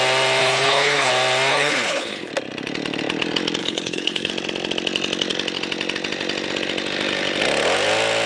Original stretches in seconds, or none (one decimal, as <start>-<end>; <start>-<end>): 0.0-0.4; 1.1-1.5; 2.3-3.6; 4.3-8.3